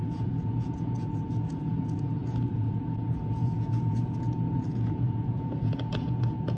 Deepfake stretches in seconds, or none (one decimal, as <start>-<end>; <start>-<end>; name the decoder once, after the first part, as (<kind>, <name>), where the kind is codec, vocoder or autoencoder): 0.0-6.6 (vocoder, Vocos)